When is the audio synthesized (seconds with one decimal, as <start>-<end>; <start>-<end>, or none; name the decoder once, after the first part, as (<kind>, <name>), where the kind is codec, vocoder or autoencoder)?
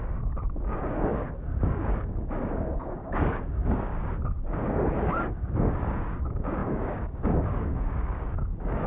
0.0-3.9 (codec, DAC); 4.4-8.9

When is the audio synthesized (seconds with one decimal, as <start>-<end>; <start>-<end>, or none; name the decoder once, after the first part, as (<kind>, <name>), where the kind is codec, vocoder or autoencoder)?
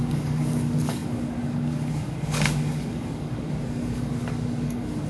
0.0-5.1 (codec, DAC)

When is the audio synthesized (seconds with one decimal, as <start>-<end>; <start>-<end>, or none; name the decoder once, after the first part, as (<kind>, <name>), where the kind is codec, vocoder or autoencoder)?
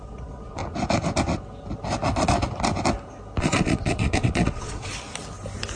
0.0-0.6 (vocoder, Vocos); 3.4-4.9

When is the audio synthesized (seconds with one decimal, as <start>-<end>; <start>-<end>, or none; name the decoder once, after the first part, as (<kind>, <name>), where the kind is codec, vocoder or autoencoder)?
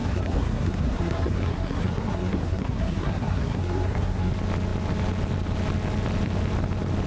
0.0-4.3 (codec, SNAC)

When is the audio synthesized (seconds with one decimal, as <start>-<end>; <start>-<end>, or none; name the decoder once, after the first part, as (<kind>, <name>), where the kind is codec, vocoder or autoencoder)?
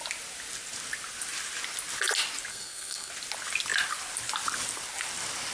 2.5-3.1 (codec, SNAC)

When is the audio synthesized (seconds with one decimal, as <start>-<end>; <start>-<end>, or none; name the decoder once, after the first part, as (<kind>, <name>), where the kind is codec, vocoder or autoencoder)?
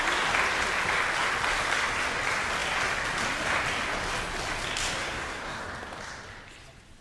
5.0-5.6 (codec, SNAC)